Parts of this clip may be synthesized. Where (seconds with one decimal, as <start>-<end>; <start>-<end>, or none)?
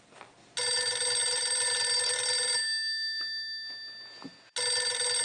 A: none